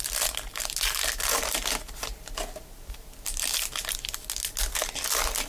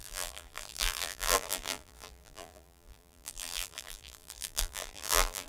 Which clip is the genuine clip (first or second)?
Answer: first